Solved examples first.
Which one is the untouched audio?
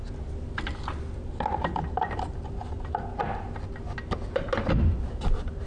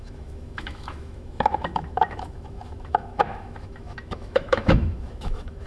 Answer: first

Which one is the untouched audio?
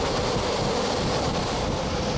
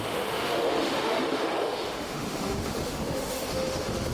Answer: first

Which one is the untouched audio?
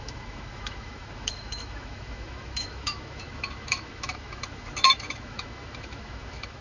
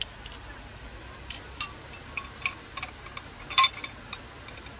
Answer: second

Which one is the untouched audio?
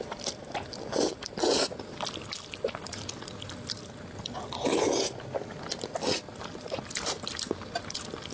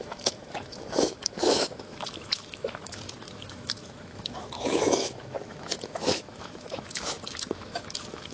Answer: first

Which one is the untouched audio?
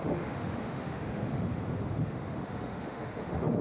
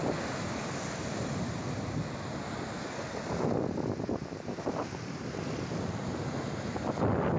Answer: second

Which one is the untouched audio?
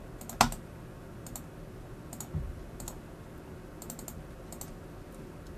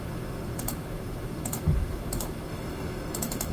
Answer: first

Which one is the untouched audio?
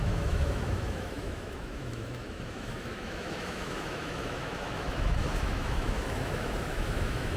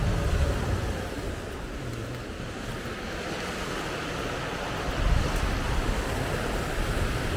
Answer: second